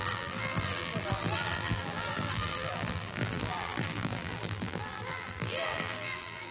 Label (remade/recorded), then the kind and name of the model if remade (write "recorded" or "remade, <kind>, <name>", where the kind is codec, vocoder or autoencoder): remade, vocoder, BigVGAN v2